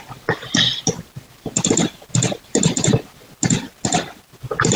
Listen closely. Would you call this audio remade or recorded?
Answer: recorded